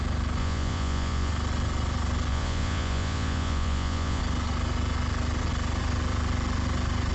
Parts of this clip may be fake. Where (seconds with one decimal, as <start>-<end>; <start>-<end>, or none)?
0.4-1.3; 2.3-4.2